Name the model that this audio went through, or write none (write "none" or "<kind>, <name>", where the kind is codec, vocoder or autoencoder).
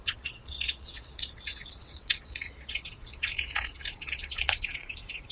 vocoder, Vocos